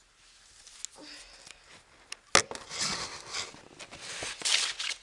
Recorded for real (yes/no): yes